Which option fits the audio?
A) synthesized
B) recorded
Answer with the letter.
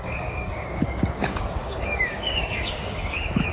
A